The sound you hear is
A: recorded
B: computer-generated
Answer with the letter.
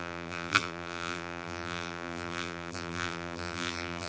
B